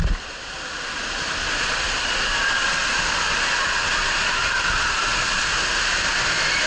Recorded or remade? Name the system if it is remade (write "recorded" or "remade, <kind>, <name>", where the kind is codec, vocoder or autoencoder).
recorded